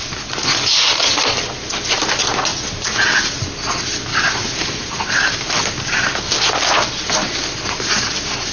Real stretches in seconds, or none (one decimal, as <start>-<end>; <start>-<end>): 0.0-4.1; 5.6-8.5